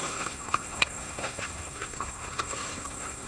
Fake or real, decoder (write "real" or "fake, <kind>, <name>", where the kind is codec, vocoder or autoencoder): fake, codec, SNAC